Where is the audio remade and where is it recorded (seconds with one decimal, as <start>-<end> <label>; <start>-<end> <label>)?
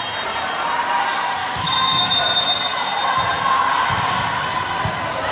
0.0-1.4 recorded; 1.4-2.2 remade; 2.2-5.3 recorded